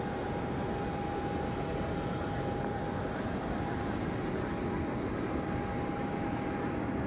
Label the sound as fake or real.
real